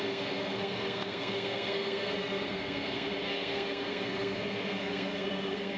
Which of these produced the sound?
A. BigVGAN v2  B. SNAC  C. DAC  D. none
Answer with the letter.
B